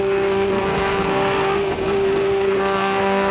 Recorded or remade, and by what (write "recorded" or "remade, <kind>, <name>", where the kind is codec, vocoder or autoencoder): remade, codec, SNAC